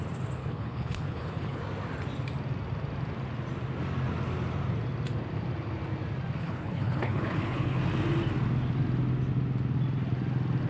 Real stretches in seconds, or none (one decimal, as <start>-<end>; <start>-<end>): 0.0-0.4; 1.6-6.4; 7.8-10.7